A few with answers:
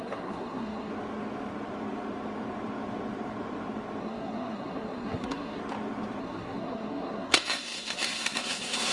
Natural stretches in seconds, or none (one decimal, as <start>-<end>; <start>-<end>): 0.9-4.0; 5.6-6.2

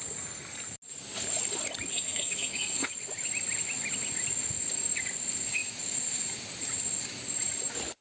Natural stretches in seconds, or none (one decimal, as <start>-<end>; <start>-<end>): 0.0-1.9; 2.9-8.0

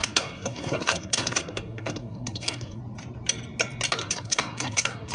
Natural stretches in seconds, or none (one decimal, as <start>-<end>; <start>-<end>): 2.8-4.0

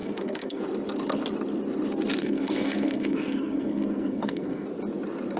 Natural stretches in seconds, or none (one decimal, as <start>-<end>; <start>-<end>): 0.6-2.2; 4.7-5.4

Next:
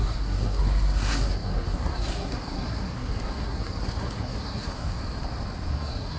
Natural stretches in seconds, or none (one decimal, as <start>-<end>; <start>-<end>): 5.0-5.7

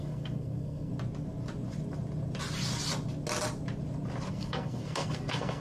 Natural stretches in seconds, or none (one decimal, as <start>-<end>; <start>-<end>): 0.9-4.3

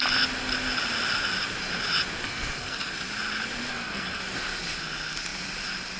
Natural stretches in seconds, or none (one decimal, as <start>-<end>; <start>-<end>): 0.0-2.2; 2.9-3.7; 4.2-6.0